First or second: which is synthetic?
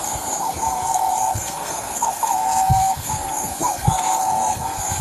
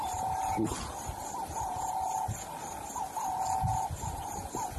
first